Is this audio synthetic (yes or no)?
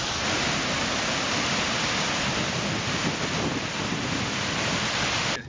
no